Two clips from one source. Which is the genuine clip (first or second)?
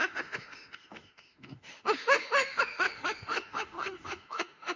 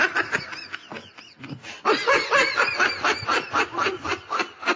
second